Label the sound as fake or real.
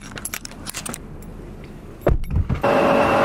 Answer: fake